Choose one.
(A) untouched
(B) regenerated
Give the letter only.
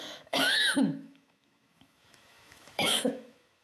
B